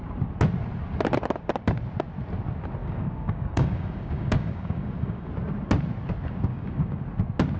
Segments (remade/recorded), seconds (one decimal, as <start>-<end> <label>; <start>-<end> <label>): 0.0-2.8 recorded; 2.8-5.3 remade; 5.3-6.5 recorded; 6.5-7.0 remade; 7.0-7.6 recorded